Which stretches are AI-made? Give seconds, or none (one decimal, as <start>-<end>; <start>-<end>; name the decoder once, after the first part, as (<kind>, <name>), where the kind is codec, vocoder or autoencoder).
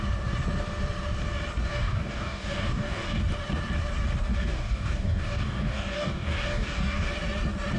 1.7-3.2 (codec, DAC); 4.3-7.1